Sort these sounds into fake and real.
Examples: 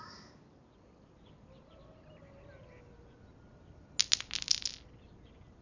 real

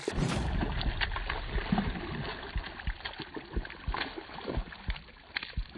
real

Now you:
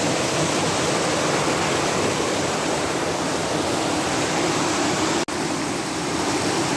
real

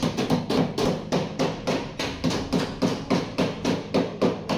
real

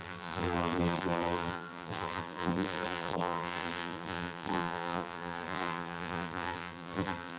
fake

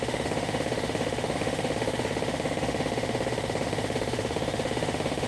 fake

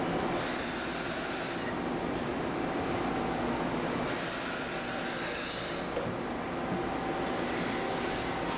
real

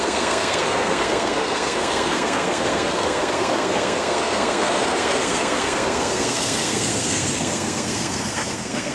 fake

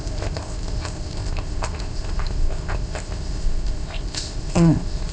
fake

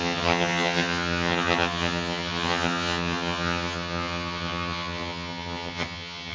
fake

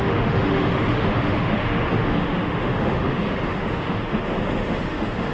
fake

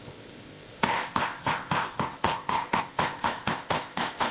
fake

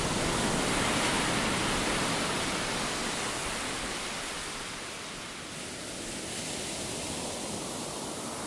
real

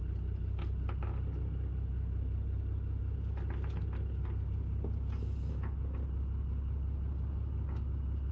real